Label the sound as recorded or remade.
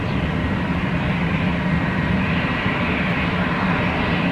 remade